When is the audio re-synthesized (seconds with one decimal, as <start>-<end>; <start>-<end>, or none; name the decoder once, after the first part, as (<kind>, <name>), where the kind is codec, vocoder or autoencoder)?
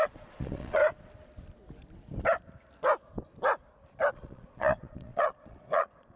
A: 0.0-0.8 (vocoder, Vocos); 4.1-6.2